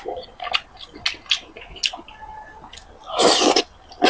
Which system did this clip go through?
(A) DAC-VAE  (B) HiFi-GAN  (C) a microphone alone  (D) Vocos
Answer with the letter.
C